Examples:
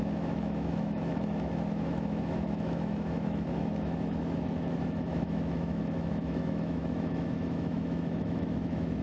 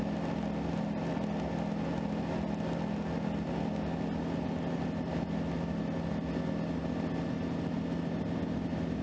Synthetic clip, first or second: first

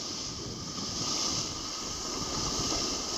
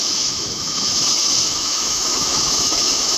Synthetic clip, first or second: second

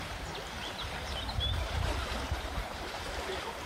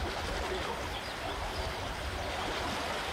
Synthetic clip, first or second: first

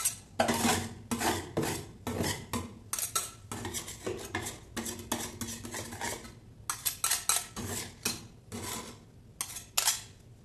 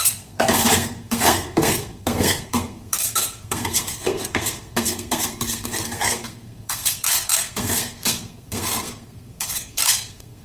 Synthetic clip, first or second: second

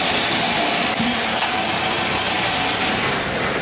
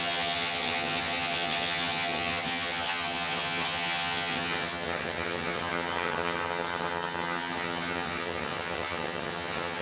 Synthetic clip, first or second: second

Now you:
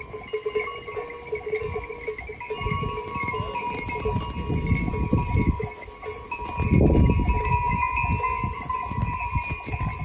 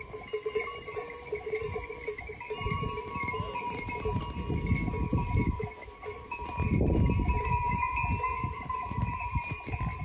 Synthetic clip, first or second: second